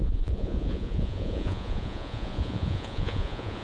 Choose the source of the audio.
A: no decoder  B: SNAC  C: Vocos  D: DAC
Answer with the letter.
C